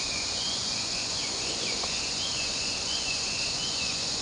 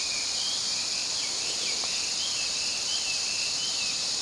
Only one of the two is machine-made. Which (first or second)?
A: first